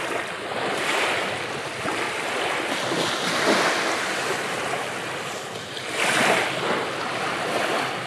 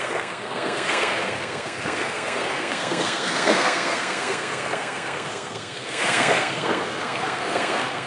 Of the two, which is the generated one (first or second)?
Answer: second